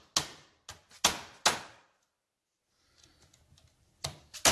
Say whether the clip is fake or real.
real